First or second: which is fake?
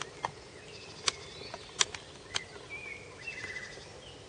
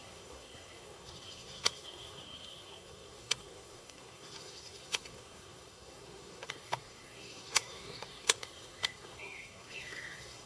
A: second